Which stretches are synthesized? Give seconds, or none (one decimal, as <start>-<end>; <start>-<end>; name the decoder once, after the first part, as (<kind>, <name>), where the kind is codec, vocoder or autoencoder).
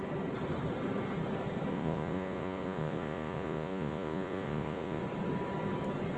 1.7-5.0 (vocoder, Vocos)